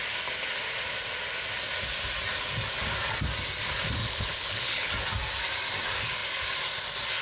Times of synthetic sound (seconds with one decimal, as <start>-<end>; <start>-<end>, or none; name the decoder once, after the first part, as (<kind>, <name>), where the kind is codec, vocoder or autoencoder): 4.0-4.9 (codec, HILCodec)